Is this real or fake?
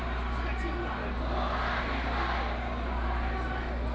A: real